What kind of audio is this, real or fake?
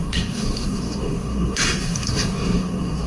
fake